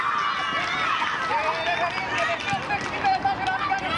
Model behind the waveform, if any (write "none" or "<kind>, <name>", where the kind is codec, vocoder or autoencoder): none